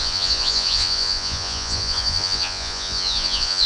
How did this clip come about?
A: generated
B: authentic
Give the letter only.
A